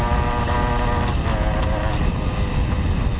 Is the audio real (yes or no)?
yes